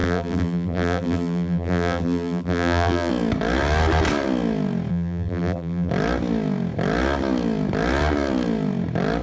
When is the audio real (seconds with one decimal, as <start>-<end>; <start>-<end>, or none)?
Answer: 3.1-4.9; 5.9-9.2